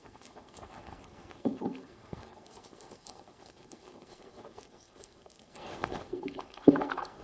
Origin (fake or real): fake